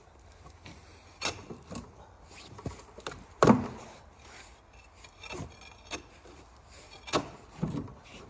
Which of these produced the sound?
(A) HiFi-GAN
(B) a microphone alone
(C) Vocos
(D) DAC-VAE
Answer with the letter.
B